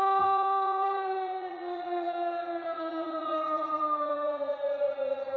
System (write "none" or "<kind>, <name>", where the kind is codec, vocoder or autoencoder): vocoder, Vocos